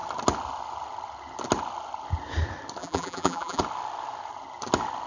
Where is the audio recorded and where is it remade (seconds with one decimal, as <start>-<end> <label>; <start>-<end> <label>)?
0.0-2.8 recorded; 2.8-3.6 remade; 3.6-5.1 recorded